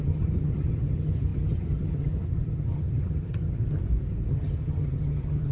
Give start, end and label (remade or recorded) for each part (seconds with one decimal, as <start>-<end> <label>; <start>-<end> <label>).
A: 0.0-3.8 remade; 3.8-4.3 recorded; 4.3-5.5 remade

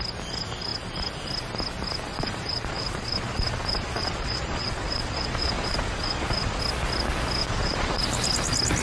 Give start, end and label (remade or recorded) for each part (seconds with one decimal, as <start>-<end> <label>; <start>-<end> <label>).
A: 0.0-2.1 recorded; 2.1-6.6 remade; 6.6-7.4 recorded; 7.4-8.0 remade; 8.0-8.8 recorded

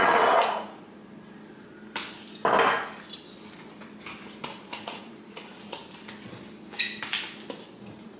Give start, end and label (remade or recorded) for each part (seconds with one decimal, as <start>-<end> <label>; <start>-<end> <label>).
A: 0.0-1.0 remade; 1.0-4.4 recorded; 4.4-5.8 remade; 5.8-7.6 recorded; 7.6-8.2 remade

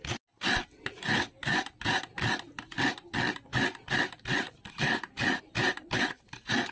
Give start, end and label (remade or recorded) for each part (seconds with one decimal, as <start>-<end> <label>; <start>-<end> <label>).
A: 0.0-6.7 recorded

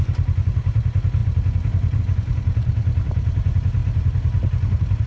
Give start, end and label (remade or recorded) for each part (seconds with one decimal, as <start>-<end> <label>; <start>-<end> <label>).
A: 0.0-5.1 recorded

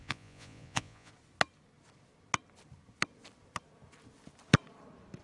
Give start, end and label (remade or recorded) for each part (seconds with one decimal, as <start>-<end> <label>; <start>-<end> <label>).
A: 0.0-1.1 remade; 1.1-5.2 recorded